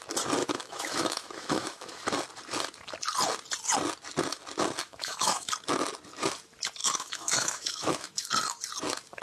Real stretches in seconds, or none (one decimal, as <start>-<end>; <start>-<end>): 0.0-0.4; 2.0-4.8; 5.5-6.8; 8.3-9.2